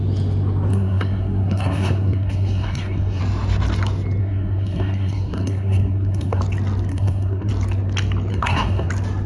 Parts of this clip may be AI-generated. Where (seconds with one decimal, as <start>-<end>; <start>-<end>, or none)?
0.7-3.2; 4.2-6.4; 6.9-7.5; 8.3-8.9